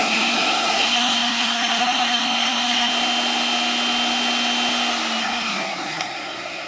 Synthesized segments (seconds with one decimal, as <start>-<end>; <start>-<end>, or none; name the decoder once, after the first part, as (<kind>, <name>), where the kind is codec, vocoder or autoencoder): 0.0-2.9 (codec, SNAC); 5.2-6.7